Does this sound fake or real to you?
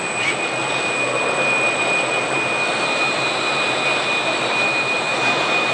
real